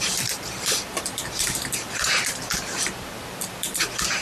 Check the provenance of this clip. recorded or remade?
remade